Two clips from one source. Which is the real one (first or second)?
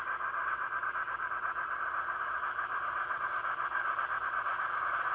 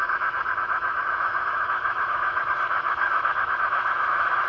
first